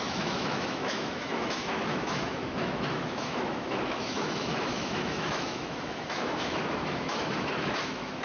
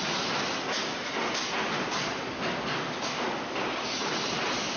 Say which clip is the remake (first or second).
first